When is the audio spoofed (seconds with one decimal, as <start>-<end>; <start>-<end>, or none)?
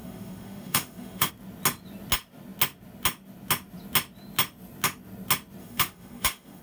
0.0-1.3; 5.6-6.6